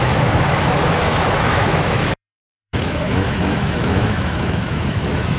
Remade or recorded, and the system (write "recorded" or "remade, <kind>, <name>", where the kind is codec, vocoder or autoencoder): remade, autoencoder, DAC-VAE